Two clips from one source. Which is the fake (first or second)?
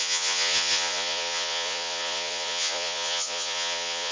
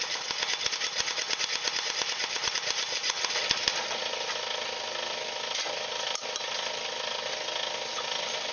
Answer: first